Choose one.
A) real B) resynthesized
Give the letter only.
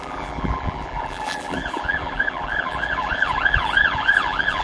B